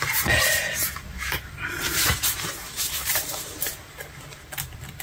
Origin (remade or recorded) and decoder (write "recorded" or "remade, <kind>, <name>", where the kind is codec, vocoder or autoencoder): recorded